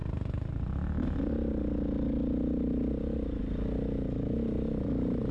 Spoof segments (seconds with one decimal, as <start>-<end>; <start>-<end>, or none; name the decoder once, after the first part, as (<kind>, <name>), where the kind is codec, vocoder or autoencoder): none